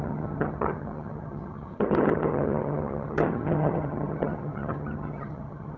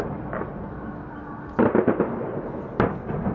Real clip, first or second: second